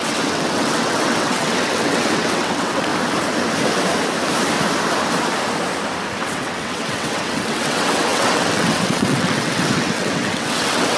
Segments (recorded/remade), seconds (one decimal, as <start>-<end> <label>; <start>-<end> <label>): 0.0-2.9 remade; 2.9-6.2 recorded; 6.2-11.0 remade